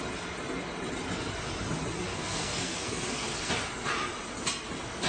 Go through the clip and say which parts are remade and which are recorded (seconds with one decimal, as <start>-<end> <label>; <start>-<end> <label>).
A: 0.0-2.1 recorded; 2.1-3.5 remade; 3.5-5.1 recorded

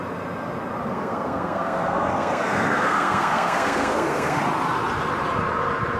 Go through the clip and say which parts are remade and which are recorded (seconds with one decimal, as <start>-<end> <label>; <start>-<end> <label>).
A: 0.0-0.8 recorded; 0.8-4.4 remade; 4.4-6.0 recorded

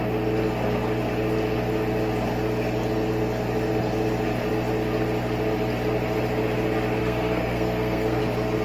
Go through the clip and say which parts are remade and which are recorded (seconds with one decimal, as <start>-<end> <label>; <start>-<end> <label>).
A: 0.0-7.0 recorded; 7.0-8.2 remade; 8.2-8.6 recorded

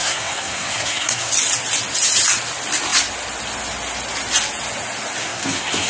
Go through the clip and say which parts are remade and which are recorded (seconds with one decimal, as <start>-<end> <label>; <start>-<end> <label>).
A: 0.0-1.3 remade; 1.3-5.2 recorded; 5.2-5.9 remade

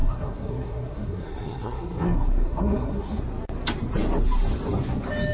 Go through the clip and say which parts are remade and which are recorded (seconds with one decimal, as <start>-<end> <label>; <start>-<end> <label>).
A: 0.0-3.2 remade; 3.2-5.3 recorded

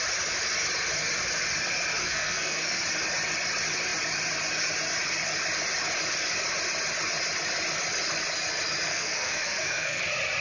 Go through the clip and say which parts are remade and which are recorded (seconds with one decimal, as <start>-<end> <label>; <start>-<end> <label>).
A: 0.0-2.0 recorded; 2.0-2.8 remade; 2.8-8.9 recorded; 8.9-10.0 remade; 10.0-10.4 recorded

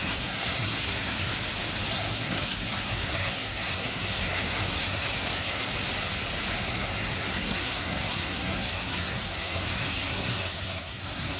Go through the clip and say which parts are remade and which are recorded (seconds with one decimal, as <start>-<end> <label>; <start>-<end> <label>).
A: 0.0-1.3 remade; 1.3-1.9 recorded; 1.9-5.7 remade; 5.7-6.7 recorded; 6.7-11.4 remade